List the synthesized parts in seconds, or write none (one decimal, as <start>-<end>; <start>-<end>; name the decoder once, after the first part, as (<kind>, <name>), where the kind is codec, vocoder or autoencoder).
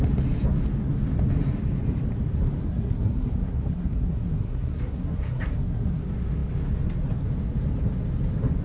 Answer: 2.6-6.0 (codec, SNAC)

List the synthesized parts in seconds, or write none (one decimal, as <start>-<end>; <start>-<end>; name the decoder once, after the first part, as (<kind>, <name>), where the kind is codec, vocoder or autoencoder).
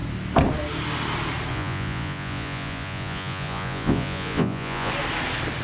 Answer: 1.5-4.9 (vocoder, Vocos)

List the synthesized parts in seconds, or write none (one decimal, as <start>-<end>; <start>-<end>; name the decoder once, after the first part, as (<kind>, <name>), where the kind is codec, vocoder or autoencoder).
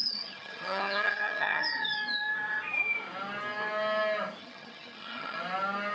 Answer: 0.0-1.6 (vocoder, HiFi-GAN); 4.4-5.4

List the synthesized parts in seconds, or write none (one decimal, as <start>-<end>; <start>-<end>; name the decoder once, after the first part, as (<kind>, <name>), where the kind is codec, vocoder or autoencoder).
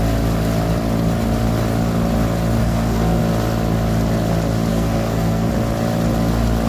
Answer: 2.6-3.2 (codec, SNAC); 4.7-5.5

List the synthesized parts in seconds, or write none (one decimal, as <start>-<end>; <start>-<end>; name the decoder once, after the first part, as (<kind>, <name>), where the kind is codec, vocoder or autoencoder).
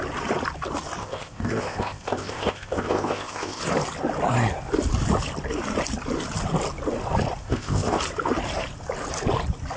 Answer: 1.0-3.6 (codec, ZipCodec); 7.4-8.0